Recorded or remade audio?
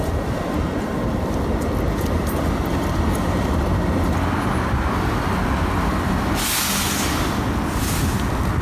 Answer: recorded